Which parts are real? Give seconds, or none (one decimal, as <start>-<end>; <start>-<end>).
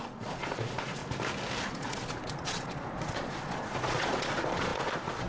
1.0-1.6